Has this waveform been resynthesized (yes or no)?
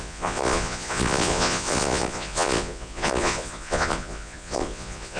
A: yes